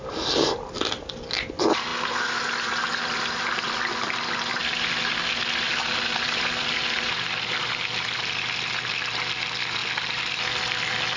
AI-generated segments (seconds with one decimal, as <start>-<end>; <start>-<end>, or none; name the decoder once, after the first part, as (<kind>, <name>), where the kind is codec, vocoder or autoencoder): none